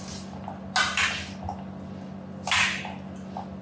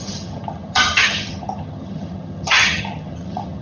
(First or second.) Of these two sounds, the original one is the first